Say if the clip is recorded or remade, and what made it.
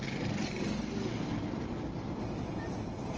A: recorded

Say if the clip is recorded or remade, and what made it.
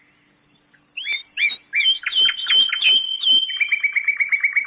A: recorded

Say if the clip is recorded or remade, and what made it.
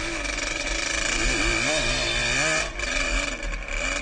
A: recorded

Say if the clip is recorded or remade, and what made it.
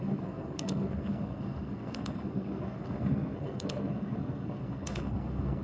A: remade, codec, SNAC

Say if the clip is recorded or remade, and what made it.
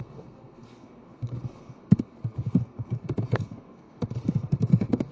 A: remade, codec, SNAC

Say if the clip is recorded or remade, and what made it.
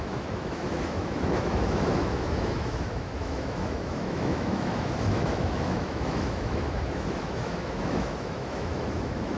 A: remade, autoencoder, DAC-VAE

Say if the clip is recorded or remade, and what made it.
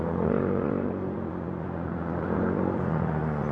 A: remade, vocoder, Vocos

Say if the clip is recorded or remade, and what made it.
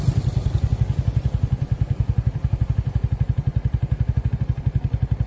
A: recorded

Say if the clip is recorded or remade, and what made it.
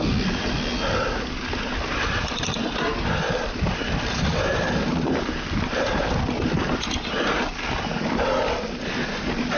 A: recorded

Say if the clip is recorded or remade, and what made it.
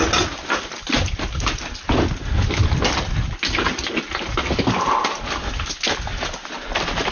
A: recorded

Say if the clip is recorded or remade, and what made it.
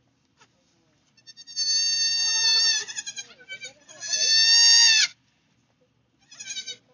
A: recorded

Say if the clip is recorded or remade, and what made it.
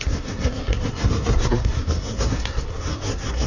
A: remade, codec, SNAC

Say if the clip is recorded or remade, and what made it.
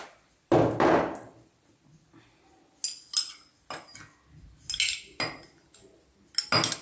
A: recorded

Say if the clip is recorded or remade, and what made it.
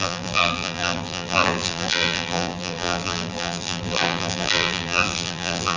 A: remade, vocoder, BigVGAN v2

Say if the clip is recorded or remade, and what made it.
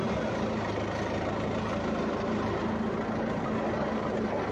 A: recorded